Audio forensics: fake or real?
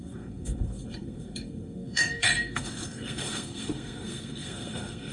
fake